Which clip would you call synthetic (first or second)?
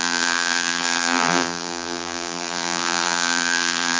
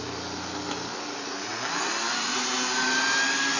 first